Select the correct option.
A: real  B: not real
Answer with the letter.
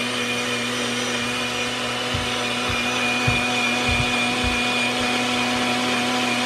A